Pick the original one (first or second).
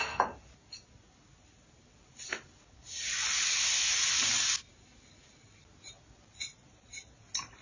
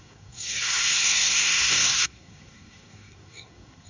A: first